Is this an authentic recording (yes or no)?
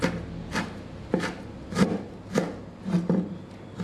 yes